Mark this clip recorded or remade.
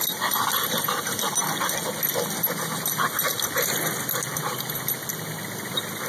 recorded